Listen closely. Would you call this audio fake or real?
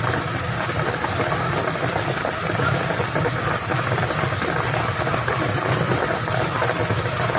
real